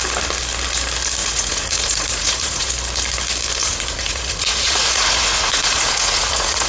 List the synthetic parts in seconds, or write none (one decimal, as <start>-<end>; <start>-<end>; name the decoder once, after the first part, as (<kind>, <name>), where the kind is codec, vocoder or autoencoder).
1.2-2.7 (vocoder, Vocos); 3.6-6.7